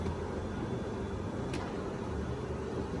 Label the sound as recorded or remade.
recorded